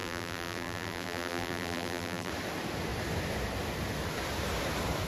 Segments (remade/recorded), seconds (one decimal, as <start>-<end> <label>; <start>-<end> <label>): 0.0-2.3 remade; 2.3-5.1 recorded